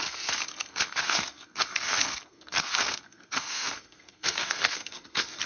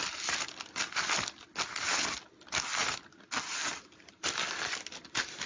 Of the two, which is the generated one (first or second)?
first